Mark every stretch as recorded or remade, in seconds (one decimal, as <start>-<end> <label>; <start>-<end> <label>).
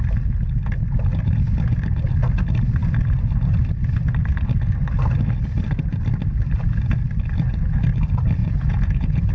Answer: 0.0-8.4 recorded; 8.4-9.3 remade